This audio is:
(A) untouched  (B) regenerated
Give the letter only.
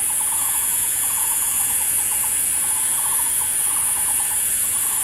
B